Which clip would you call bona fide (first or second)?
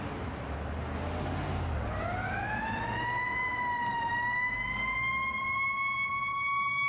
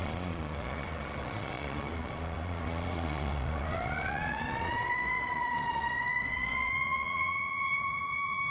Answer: first